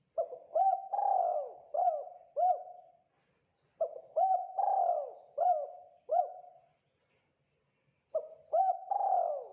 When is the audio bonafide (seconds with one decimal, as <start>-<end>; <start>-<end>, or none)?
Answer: 0.0-9.5